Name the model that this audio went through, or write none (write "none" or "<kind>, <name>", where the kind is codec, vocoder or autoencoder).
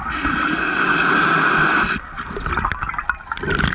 none